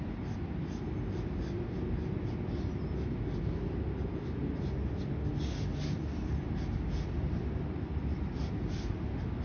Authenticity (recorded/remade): recorded